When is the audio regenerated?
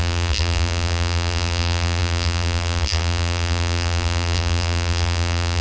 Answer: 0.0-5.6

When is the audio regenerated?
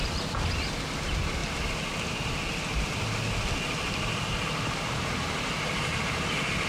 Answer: none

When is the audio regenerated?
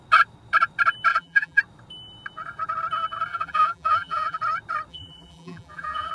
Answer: 1.1-1.6; 3.3-4.4; 4.9-6.1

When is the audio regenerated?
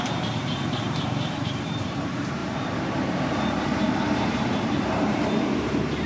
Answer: 0.0-6.1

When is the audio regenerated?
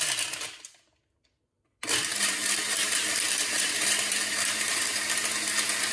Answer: 2.1-4.9